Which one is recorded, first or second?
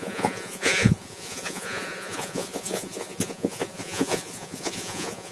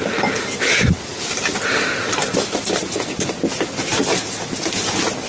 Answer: second